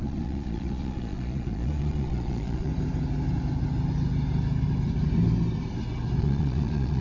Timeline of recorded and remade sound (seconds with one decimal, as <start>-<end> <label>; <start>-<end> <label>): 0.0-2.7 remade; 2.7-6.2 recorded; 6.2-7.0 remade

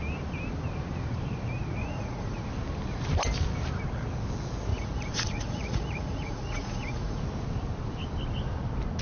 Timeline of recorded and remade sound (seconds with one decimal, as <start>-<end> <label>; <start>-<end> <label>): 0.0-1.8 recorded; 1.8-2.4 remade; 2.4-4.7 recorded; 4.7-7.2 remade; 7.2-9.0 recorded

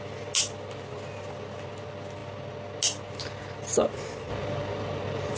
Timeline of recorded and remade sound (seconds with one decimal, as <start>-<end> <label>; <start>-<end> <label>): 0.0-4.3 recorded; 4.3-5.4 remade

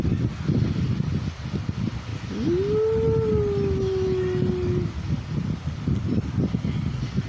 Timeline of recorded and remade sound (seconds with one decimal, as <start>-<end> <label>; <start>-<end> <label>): 0.0-7.3 recorded